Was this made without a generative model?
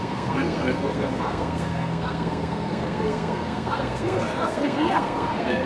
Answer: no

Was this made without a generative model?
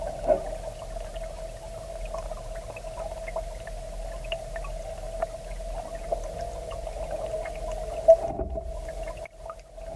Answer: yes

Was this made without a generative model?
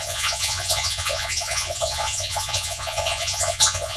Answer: no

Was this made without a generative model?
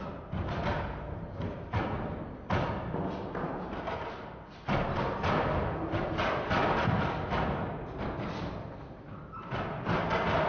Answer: yes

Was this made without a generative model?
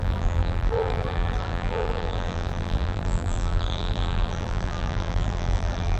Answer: no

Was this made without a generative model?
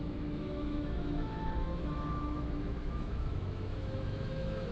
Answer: no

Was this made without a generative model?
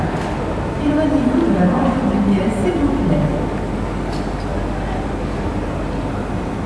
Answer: yes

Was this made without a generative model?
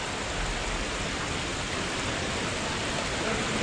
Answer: yes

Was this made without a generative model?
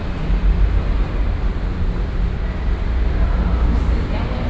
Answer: yes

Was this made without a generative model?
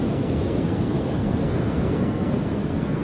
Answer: no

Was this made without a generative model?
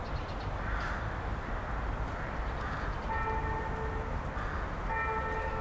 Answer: yes